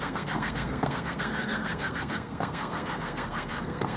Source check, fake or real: fake